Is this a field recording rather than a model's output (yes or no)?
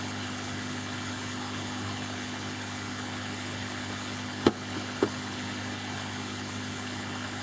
no